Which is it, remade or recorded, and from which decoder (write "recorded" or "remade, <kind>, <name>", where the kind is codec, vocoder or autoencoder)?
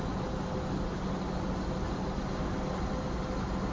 recorded